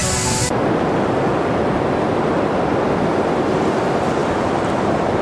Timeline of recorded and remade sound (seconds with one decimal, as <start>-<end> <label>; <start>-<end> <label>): 0.0-3.1 recorded; 3.1-5.2 remade